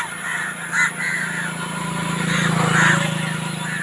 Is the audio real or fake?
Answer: real